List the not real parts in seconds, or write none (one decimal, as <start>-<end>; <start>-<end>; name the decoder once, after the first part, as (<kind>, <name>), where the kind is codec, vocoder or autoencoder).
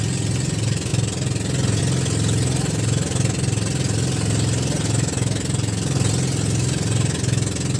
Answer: none